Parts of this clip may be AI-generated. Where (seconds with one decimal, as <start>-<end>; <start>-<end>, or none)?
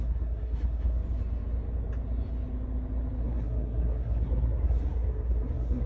0.0-1.0; 3.2-5.9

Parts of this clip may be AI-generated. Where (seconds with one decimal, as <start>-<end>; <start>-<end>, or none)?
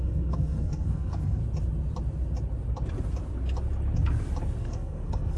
0.0-1.4; 4.6-5.4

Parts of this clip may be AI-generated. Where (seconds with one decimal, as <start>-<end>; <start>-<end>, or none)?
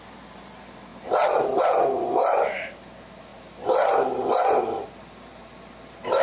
none